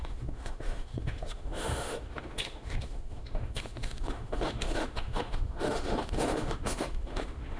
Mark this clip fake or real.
fake